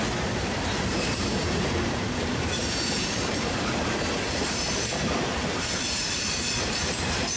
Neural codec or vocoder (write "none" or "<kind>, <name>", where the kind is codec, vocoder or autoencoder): vocoder, BigVGAN v2